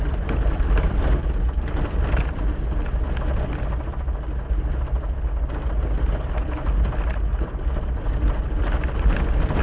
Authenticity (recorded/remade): recorded